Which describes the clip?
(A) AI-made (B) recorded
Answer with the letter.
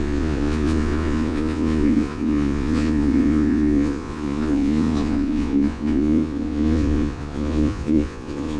A